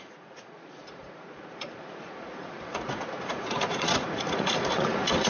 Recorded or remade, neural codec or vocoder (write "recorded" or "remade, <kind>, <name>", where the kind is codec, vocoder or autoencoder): remade, vocoder, Vocos